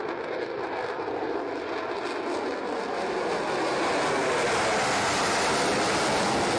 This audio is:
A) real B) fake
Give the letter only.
A